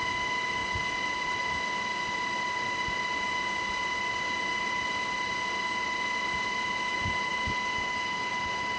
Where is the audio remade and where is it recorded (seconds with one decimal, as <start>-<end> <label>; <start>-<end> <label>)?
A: 0.0-8.8 recorded